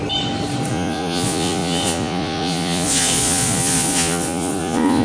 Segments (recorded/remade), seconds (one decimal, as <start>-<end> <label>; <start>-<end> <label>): 0.0-0.7 recorded; 0.7-5.0 remade